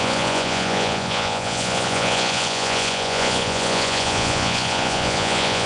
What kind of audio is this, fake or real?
fake